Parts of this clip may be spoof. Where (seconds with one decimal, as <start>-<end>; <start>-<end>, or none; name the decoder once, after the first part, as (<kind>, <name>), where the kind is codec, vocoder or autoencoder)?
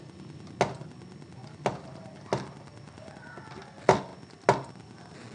1.4-3.1 (vocoder, BigVGAN v2)